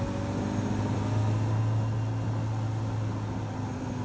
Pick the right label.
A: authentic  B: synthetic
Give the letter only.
A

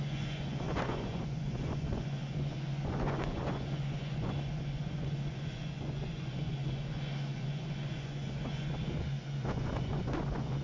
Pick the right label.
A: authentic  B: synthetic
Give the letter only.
B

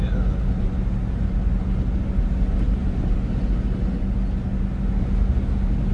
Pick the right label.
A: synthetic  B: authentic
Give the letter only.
B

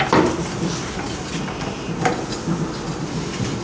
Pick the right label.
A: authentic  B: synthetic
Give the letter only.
A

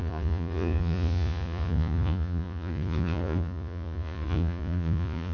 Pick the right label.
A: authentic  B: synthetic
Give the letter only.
B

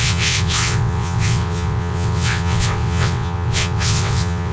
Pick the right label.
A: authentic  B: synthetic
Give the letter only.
B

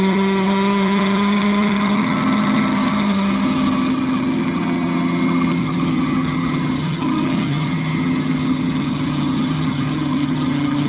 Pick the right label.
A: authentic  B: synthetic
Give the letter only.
B